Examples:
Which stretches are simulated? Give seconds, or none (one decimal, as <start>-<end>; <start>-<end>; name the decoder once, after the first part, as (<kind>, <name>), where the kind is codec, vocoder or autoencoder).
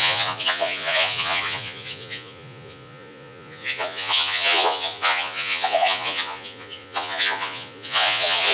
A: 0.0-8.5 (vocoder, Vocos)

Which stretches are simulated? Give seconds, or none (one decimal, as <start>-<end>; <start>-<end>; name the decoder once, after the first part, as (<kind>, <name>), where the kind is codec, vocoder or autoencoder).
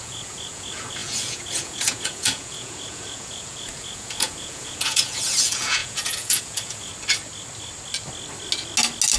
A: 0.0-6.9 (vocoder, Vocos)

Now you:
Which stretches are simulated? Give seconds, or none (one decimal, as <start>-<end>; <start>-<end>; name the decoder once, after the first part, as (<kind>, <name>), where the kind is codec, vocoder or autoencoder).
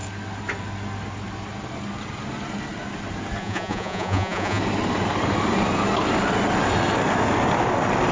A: 3.4-4.6 (vocoder, Vocos)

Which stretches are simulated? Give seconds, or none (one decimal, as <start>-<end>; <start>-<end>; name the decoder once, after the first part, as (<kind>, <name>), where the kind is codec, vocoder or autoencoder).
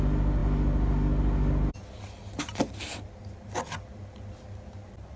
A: none